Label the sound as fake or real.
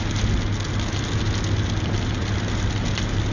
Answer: real